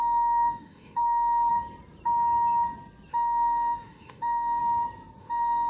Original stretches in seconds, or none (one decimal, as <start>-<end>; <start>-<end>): 1.5-3.1; 4.6-5.2

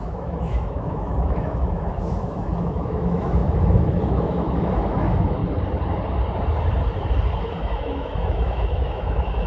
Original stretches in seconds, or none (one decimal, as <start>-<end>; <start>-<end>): 5.4-7.4

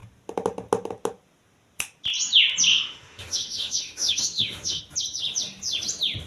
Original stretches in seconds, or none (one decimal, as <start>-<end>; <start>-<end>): 0.0-2.7; 4.8-6.3